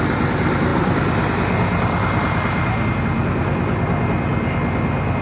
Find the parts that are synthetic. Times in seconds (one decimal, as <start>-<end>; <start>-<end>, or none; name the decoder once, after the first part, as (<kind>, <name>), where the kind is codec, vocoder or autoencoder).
none